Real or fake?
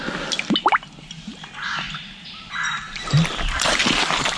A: real